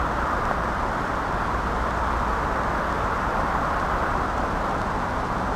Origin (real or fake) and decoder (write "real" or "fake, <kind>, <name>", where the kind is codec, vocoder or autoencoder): real